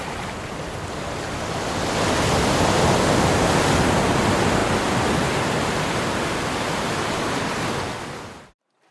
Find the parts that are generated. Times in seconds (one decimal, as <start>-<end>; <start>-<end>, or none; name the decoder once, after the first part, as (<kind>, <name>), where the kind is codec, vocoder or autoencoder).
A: none